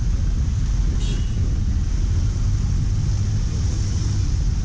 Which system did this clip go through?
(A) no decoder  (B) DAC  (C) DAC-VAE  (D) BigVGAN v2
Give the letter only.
A